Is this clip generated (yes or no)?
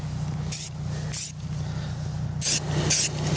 no